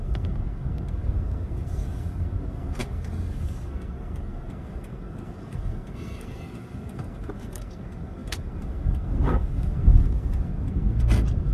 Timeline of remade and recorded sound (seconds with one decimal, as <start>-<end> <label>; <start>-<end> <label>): 0.0-11.5 remade

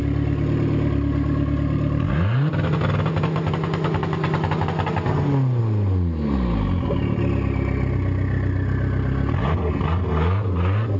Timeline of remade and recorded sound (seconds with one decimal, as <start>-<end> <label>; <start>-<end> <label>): 0.0-11.0 recorded